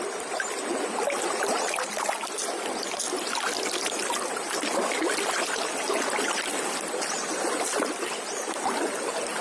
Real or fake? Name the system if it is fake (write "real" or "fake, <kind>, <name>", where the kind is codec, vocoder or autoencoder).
real